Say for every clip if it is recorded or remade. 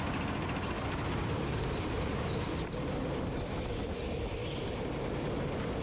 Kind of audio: recorded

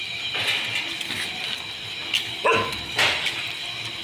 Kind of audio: recorded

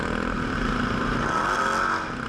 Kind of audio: recorded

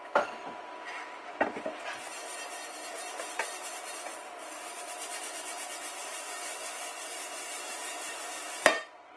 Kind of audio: recorded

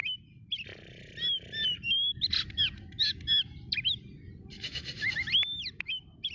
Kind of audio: recorded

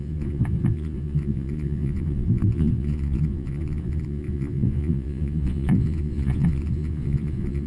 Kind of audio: remade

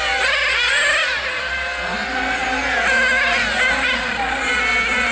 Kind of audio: recorded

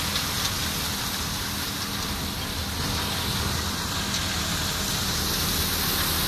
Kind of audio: recorded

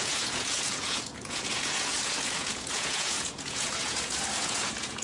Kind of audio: remade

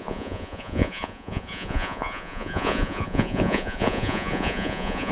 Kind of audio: remade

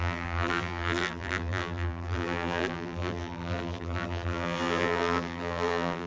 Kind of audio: remade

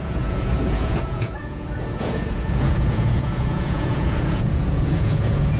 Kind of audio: remade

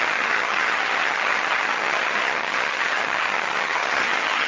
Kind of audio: remade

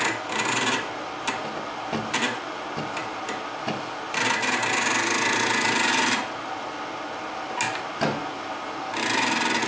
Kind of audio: recorded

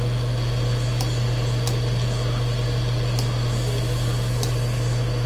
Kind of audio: recorded